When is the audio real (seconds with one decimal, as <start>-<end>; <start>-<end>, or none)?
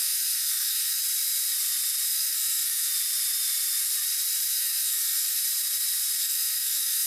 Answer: 1.0-2.1; 2.9-4.5; 5.4-6.2